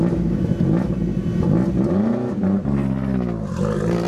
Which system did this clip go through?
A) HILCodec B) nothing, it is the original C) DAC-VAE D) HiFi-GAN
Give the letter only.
B